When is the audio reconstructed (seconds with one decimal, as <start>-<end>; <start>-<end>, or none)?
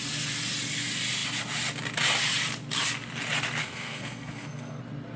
3.6-4.8